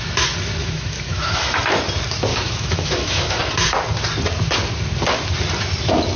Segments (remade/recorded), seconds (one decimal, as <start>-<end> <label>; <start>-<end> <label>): 0.0-0.6 recorded; 0.6-1.6 remade; 1.6-2.3 recorded; 2.3-3.4 remade; 3.4-6.2 recorded